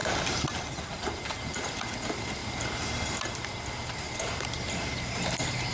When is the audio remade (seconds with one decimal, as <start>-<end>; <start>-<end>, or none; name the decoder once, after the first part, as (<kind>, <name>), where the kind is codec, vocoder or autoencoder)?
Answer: none